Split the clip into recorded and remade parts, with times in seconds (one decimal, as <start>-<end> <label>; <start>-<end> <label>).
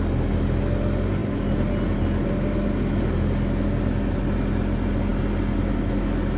0.0-6.4 recorded